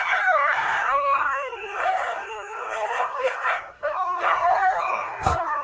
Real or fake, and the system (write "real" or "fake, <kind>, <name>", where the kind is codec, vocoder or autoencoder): fake, codec, SNAC